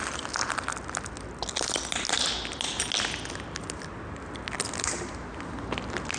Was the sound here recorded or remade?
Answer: recorded